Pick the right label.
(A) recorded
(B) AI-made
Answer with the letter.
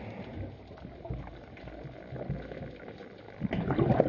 A